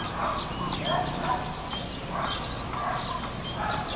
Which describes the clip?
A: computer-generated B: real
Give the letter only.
B